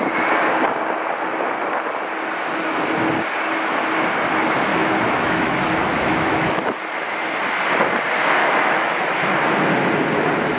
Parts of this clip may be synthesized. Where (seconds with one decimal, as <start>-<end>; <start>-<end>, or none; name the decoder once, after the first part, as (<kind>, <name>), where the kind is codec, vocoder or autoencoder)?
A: 4.7-6.6 (autoencoder, DAC-VAE); 8.4-9.1